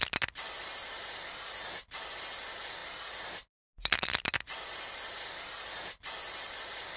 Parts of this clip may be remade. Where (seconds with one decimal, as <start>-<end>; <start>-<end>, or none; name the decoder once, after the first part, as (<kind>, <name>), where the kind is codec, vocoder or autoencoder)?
none